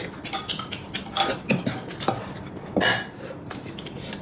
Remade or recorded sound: recorded